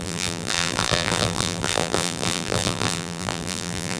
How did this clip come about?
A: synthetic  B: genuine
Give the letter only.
A